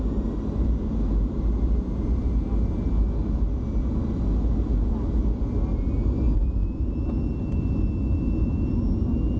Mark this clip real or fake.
real